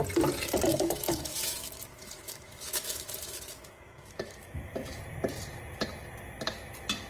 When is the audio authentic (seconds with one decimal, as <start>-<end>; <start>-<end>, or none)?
0.0-0.7; 5.0-7.1

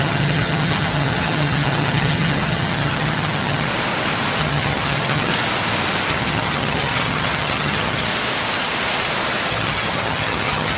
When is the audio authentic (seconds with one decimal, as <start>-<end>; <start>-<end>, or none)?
3.7-4.4; 5.3-6.1; 8.1-9.5

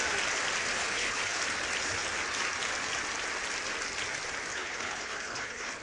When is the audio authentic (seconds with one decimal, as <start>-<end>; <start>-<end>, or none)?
0.0-0.7; 1.4-4.5